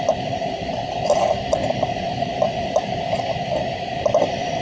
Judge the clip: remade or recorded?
remade